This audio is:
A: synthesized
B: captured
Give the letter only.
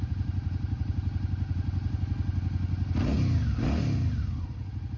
B